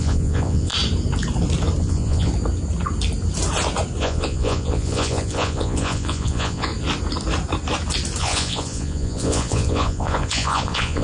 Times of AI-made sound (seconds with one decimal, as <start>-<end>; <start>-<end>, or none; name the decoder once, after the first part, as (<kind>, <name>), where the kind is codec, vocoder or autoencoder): 0.0-0.7 (vocoder, Vocos); 1.8-2.3; 4.0-6.7; 8.2-11.0